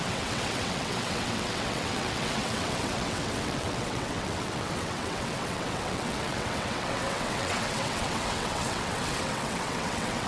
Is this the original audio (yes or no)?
no